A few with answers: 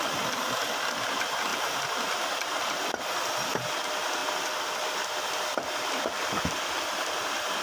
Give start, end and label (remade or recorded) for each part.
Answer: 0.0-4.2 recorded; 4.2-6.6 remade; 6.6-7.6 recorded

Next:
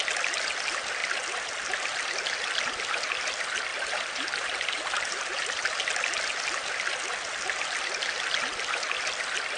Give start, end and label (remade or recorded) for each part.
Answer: 0.0-3.7 recorded; 3.7-5.7 remade; 5.7-9.6 recorded

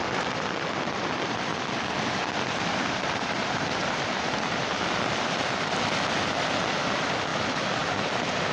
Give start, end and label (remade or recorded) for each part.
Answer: 0.0-1.5 remade; 1.5-2.2 recorded; 2.2-8.5 remade

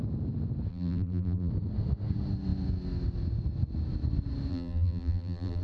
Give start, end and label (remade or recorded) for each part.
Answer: 0.0-0.7 recorded; 0.7-1.5 remade; 1.5-4.5 recorded; 4.5-5.6 remade

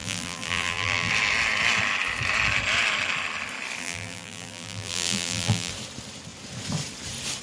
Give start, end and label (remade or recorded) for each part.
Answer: 0.0-1.1 remade; 1.1-3.8 recorded; 3.8-5.7 remade; 5.7-7.4 recorded